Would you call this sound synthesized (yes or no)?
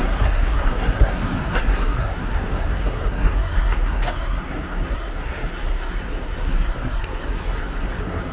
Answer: yes